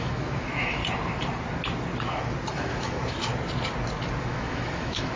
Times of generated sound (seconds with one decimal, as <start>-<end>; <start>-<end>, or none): 0.0-0.8; 2.5-3.3; 4.2-5.2